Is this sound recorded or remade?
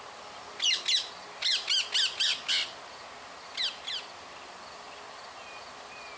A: recorded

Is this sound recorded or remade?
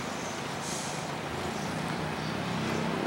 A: recorded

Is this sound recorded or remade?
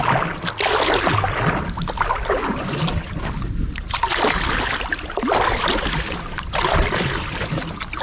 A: recorded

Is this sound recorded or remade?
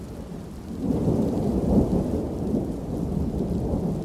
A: recorded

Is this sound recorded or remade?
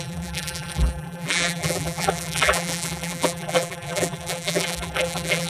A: remade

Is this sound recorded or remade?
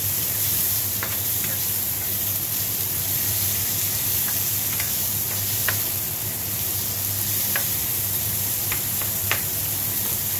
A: remade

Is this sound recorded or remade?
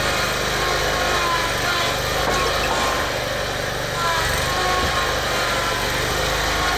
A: recorded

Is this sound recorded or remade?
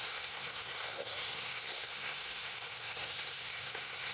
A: remade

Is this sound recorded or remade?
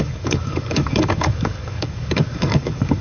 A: remade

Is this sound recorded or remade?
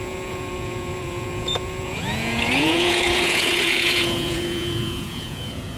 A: remade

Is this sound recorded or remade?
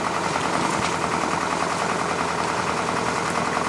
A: recorded